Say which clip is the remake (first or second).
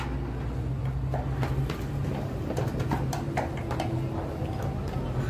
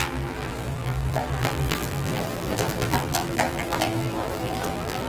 second